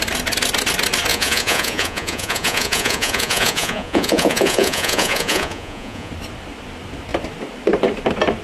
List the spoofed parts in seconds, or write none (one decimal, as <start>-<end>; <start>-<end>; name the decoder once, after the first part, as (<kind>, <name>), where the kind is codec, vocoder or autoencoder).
1.1-6.1 (vocoder, Vocos)